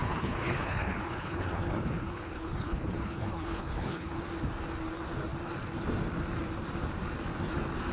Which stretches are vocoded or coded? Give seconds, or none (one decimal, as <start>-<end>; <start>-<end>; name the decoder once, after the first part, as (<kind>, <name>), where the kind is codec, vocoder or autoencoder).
0.0-4.2 (codec, HILCodec)